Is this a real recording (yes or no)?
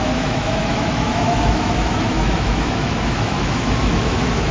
no